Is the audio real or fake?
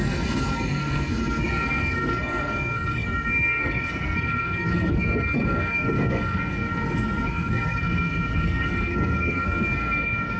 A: fake